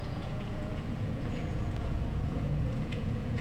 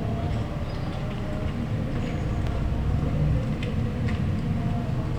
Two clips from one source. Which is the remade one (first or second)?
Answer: first